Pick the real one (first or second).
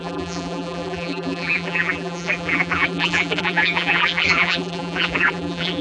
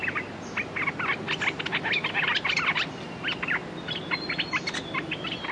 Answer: second